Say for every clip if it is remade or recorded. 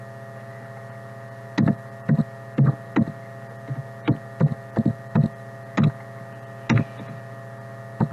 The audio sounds recorded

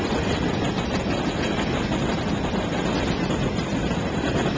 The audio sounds recorded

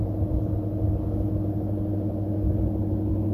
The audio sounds recorded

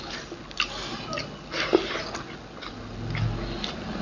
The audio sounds recorded